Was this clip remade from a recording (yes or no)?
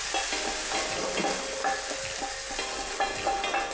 no